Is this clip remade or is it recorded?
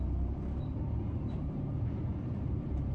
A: remade